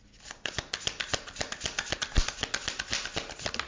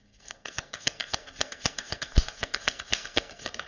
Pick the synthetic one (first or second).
second